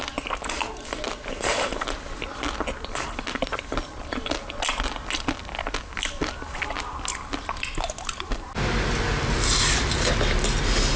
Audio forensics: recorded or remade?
recorded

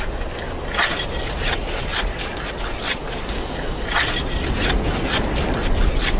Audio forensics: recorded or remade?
recorded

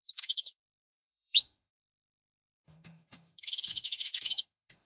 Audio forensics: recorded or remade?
remade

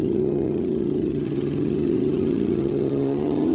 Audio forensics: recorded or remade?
remade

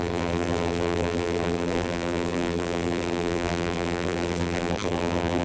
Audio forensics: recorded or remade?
remade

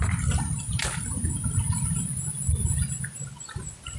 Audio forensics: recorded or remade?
recorded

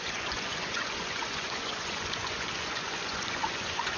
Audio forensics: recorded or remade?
remade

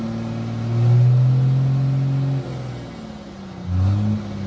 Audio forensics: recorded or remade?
recorded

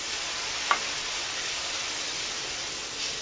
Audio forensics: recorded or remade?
recorded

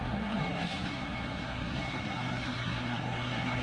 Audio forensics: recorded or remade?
remade